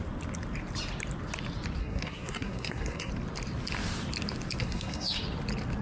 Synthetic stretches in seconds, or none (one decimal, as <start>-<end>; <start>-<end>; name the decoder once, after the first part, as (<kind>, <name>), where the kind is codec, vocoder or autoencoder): 1.8-3.1 (codec, SNAC); 4.6-5.2